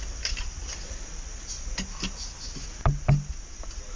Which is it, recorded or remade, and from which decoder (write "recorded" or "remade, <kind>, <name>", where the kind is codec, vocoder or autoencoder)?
recorded